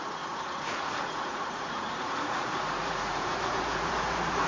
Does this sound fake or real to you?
fake